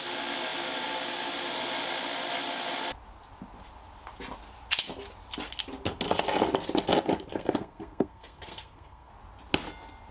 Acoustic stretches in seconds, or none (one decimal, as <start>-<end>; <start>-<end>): 0.0-7.3; 9.1-10.1